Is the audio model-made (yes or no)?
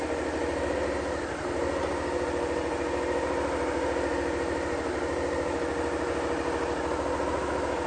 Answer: no